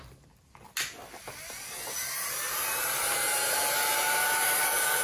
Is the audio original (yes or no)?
yes